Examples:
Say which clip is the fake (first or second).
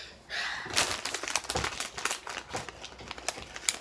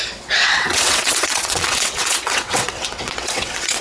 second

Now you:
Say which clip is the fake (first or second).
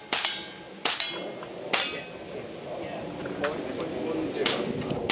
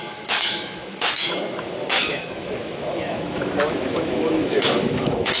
second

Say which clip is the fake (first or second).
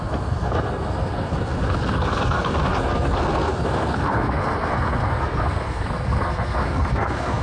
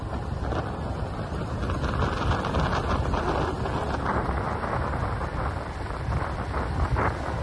first